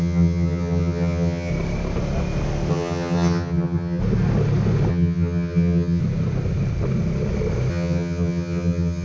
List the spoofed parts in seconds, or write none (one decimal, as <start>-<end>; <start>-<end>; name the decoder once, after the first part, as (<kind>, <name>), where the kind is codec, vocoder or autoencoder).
0.0-1.5 (vocoder, HiFi-GAN); 2.7-4.0; 4.9-6.0; 7.7-9.0